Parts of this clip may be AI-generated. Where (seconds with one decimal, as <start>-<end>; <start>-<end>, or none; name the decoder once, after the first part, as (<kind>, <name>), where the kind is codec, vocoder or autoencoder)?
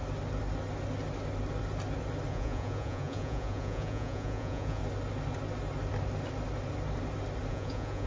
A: 2.3-4.8 (vocoder, Vocos); 7.5-8.1